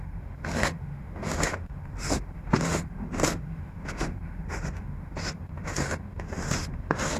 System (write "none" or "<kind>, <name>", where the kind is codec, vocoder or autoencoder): autoencoder, DAC-VAE